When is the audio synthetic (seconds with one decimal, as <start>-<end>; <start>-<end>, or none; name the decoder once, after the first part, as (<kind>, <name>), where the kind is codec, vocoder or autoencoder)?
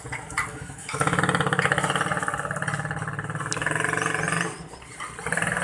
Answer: 0.5-1.2 (autoencoder, DAC-VAE)